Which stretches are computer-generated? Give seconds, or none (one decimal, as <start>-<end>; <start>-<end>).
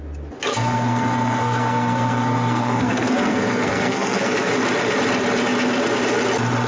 0.5-4.5